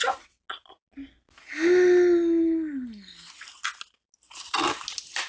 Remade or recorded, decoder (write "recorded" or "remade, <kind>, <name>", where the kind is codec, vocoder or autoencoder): recorded